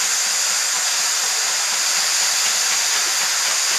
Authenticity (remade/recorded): recorded